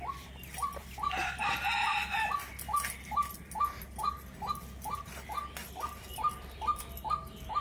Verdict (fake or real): real